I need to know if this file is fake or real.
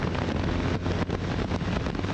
real